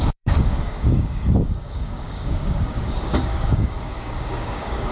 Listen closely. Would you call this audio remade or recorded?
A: remade